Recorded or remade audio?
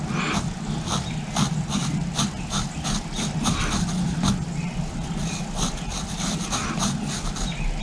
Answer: recorded